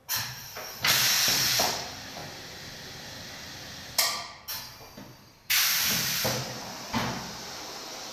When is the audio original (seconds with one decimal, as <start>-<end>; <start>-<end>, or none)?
2.2-5.4